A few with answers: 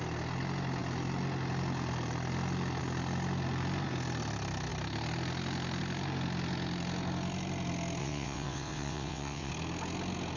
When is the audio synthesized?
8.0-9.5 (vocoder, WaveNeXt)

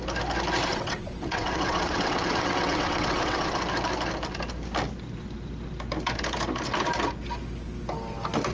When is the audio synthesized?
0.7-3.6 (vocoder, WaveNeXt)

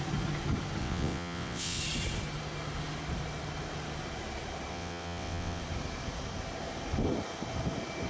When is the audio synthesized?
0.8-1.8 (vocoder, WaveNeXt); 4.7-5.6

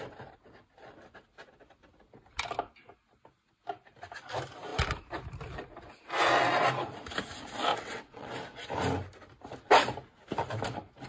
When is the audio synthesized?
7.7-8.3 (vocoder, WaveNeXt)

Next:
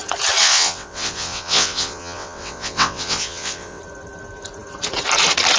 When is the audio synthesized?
0.4-3.8 (vocoder, WaveNeXt)

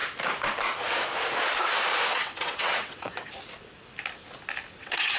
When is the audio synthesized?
2.1-3.1 (vocoder, WaveNeXt); 4.8-5.2

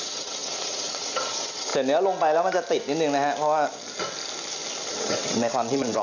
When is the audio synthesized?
0.0-1.7 (vocoder, WaveNeXt); 4.9-6.0

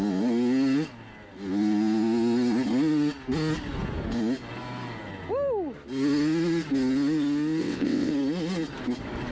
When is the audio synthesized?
7.6-8.1 (vocoder, WaveNeXt)